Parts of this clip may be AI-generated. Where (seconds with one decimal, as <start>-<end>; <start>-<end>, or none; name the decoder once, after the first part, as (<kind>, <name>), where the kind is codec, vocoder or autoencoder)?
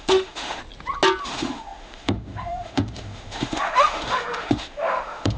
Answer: 0.0-0.6 (autoencoder, DAC-VAE); 1.2-5.4